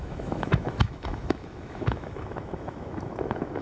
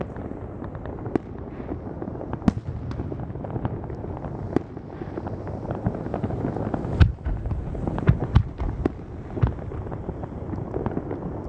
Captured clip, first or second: second